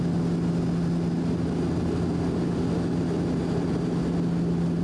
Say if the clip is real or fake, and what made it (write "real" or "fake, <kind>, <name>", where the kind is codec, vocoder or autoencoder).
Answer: real